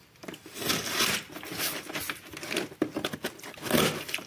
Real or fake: real